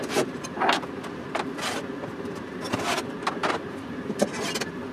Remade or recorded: recorded